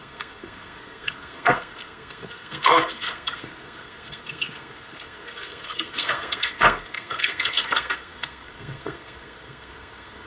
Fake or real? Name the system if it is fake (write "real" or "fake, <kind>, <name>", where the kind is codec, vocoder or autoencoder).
fake, codec, SNAC